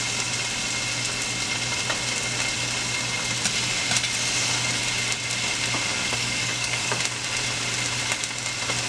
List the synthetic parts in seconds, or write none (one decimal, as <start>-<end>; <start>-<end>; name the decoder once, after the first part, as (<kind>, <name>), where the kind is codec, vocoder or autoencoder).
5.9-7.0 (codec, DAC)

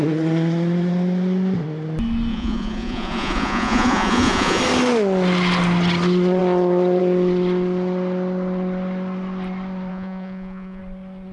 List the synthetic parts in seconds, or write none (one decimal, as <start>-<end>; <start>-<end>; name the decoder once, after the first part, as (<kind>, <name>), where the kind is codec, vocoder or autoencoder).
2.3-4.6 (vocoder, Vocos); 9.9-10.8